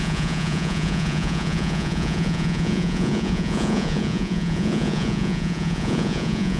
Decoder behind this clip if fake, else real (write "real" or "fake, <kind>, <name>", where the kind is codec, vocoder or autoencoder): fake, vocoder, Vocos